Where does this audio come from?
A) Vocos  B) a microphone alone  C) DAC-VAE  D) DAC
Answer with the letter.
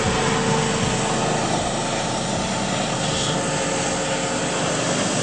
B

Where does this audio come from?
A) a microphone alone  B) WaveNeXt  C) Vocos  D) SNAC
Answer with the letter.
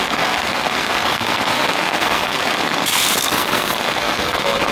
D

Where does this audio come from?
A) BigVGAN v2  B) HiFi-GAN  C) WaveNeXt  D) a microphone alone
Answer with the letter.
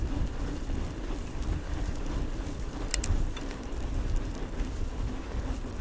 D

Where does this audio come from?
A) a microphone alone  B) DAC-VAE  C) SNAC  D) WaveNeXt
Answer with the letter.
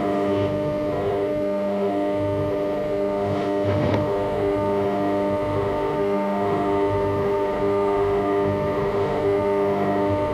B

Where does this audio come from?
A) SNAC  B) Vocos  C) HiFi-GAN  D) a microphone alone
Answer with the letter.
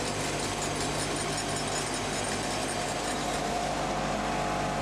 D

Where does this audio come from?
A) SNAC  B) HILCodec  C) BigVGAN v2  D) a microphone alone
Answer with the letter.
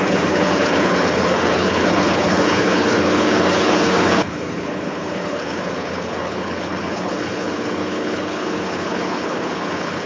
B